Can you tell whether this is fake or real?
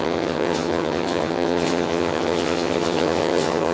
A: fake